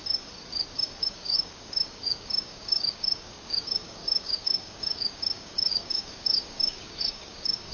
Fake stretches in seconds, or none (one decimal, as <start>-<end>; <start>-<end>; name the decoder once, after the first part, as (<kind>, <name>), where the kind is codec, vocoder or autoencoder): 1.0-7.7 (codec, DAC)